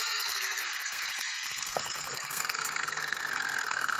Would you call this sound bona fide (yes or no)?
no